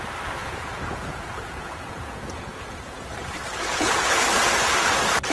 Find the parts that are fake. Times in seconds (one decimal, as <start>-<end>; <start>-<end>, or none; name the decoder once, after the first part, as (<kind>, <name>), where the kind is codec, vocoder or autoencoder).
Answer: 0.4-3.1 (vocoder, Vocos); 3.7-4.2